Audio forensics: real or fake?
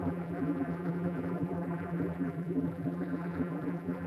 fake